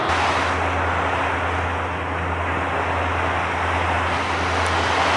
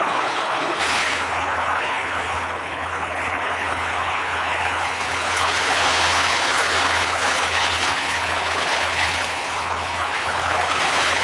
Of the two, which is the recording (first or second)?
first